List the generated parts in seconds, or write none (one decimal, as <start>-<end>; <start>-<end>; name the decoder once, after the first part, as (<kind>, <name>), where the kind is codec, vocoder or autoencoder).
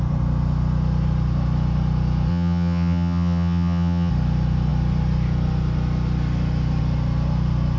2.3-4.1 (vocoder, HiFi-GAN)